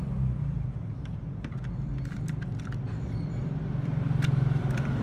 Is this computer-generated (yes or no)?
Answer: yes